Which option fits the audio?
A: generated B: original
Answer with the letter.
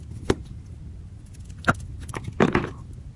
B